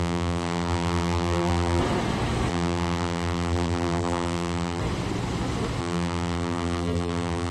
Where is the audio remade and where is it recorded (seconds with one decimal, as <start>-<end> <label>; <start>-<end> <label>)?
0.0-1.8 remade; 1.8-2.5 recorded; 2.5-4.8 remade; 4.8-5.8 recorded; 5.8-7.5 remade